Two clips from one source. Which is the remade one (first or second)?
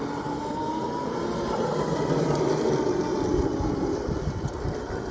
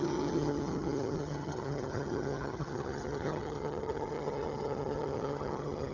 second